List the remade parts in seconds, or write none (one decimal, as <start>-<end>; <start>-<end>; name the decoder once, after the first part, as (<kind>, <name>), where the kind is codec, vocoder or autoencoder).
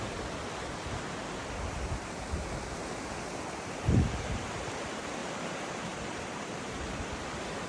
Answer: 5.2-6.7 (vocoder, BigVGAN v2)